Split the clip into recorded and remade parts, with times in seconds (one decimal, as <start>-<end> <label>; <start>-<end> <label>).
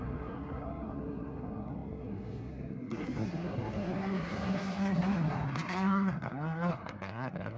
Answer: 0.0-7.6 remade